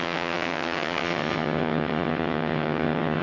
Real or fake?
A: fake